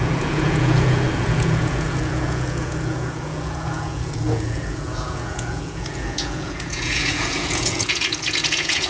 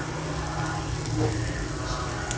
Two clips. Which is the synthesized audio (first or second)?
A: first